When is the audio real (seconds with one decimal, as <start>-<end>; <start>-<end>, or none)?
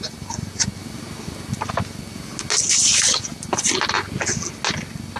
0.0-5.2